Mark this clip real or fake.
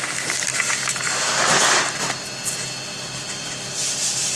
real